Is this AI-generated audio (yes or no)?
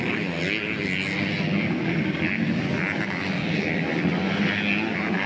no